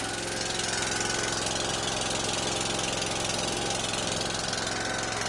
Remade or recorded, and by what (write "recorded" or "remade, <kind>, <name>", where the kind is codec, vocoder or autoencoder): recorded